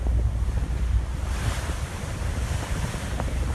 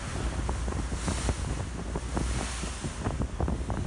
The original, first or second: second